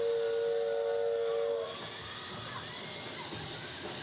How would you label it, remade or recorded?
recorded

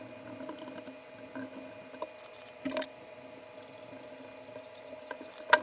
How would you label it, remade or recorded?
recorded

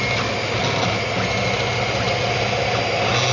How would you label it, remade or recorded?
recorded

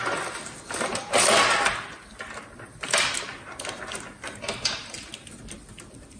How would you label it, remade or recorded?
recorded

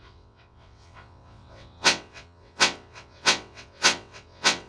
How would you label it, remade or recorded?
remade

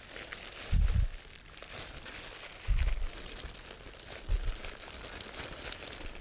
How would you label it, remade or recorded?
recorded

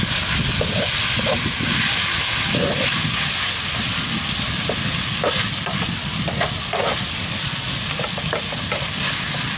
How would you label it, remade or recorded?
recorded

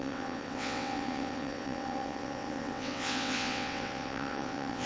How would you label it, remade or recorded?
remade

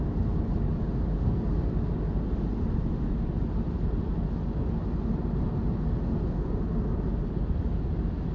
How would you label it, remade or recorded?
recorded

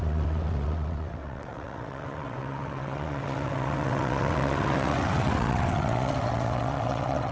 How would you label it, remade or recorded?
remade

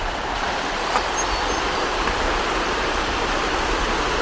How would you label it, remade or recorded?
recorded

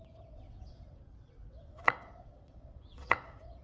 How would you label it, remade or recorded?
remade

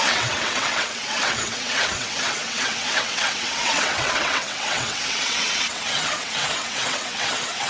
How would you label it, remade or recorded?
remade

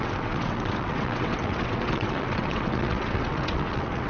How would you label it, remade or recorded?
remade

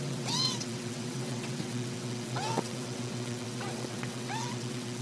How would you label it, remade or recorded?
remade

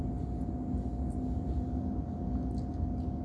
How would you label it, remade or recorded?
recorded